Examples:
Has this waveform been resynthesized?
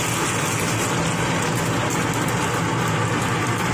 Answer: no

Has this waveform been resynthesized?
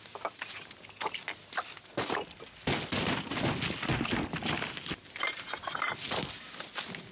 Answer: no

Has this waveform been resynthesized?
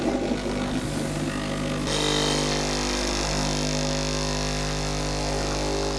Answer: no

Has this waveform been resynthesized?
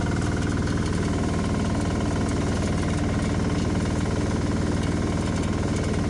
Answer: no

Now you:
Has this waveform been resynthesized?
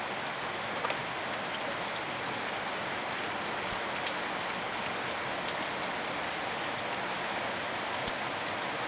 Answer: no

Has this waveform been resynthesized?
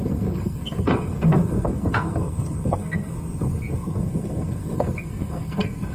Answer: yes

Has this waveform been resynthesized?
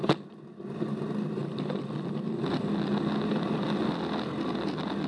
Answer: no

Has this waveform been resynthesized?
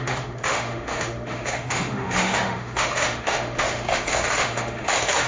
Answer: yes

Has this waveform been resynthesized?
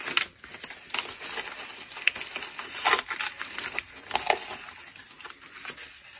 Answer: no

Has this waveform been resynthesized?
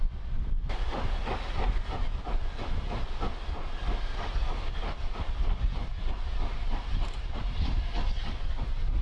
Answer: no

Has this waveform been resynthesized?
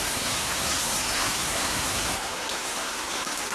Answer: yes